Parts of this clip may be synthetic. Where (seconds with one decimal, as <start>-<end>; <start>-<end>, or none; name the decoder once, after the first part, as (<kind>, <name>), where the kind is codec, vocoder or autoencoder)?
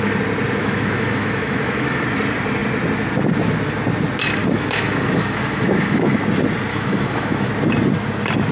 0.6-2.0 (autoencoder, DAC-VAE); 4.4-6.2; 6.7-7.5